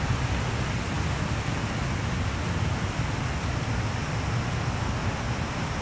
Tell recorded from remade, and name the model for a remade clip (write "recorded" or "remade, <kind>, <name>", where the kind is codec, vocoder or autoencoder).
recorded